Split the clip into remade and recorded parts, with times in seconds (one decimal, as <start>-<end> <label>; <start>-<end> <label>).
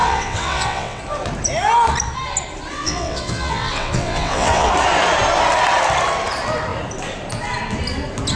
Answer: 0.0-1.0 remade; 1.0-2.7 recorded; 2.7-4.7 remade; 4.7-8.4 recorded